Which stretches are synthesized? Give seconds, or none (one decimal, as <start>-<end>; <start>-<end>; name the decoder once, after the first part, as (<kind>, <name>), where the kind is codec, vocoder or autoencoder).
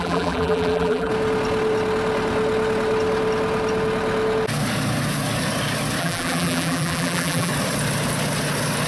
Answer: 0.0-1.1 (vocoder, BigVGAN v2); 6.0-7.5